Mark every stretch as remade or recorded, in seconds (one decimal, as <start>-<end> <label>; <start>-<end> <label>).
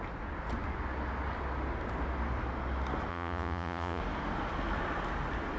0.0-3.1 recorded; 3.1-4.0 remade; 4.0-5.6 recorded